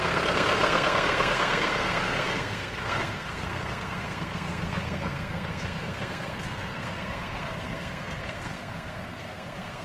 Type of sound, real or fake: fake